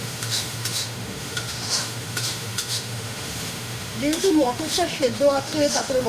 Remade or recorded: remade